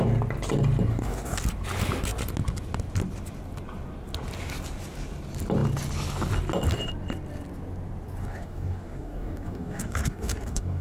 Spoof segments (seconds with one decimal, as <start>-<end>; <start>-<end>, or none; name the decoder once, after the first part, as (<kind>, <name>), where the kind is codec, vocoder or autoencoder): 0.9-1.4 (codec, DAC); 8.2-10.8